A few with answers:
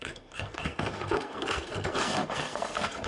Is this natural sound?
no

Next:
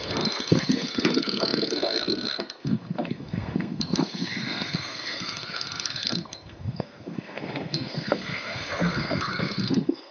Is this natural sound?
no